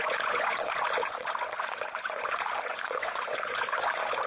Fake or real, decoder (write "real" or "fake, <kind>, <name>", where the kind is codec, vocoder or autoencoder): fake, vocoder, Vocos